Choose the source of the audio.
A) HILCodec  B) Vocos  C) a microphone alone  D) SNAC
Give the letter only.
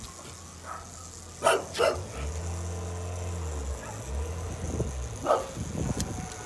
C